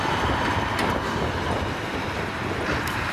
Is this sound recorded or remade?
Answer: recorded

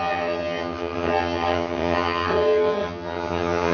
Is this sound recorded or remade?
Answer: remade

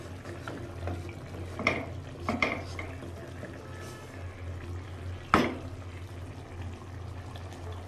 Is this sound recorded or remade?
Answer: recorded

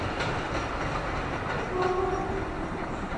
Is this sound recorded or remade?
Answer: recorded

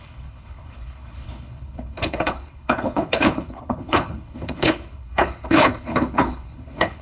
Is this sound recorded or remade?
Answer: remade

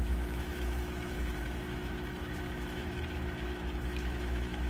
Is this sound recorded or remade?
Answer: remade